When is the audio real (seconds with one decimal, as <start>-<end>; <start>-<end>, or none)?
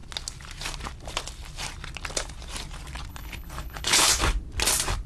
0.0-3.1; 4.2-5.1